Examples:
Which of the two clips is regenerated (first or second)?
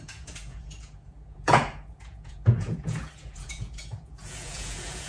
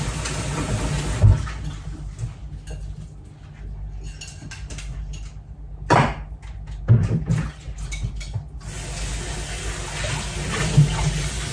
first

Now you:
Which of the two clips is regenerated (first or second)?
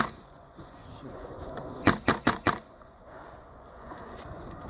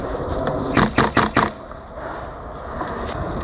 first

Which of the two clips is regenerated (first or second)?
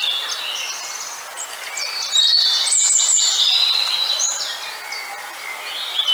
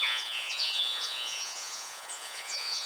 second